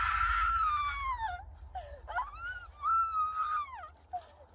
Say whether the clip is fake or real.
real